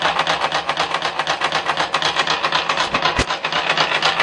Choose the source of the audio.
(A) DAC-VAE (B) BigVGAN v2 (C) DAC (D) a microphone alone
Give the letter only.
D